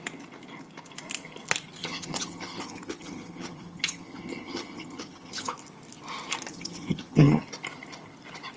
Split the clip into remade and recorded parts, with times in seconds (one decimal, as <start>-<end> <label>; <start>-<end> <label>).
0.0-1.8 recorded; 1.8-5.5 remade; 5.5-6.5 recorded; 6.5-7.4 remade; 7.4-8.6 recorded